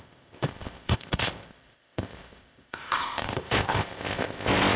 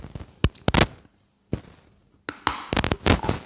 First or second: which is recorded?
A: second